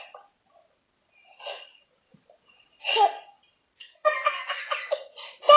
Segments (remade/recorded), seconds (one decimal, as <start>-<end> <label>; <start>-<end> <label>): 0.0-3.8 recorded; 3.8-4.6 remade; 4.6-5.6 recorded